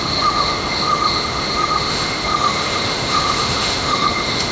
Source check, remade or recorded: remade